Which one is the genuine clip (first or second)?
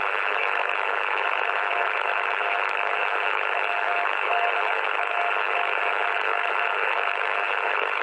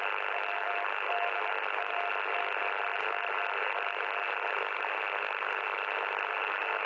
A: second